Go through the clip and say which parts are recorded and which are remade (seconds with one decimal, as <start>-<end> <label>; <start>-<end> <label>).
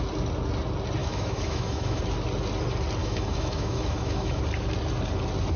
0.0-1.0 recorded; 1.0-2.0 remade; 2.0-3.0 recorded; 3.0-4.4 remade; 4.4-5.6 recorded